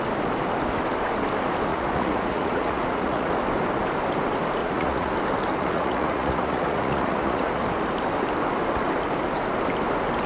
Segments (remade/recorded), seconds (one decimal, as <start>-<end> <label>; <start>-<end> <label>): 0.0-1.7 recorded; 1.7-3.3 remade; 3.3-4.6 recorded; 4.6-5.1 remade; 5.1-5.6 recorded; 5.6-7.6 remade; 7.6-10.3 recorded